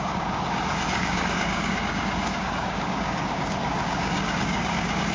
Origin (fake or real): fake